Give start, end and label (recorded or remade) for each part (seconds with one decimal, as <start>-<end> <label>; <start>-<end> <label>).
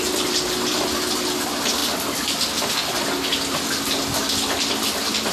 0.0-5.3 recorded